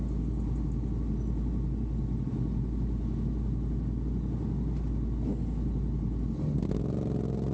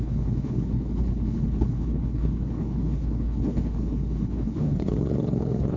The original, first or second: first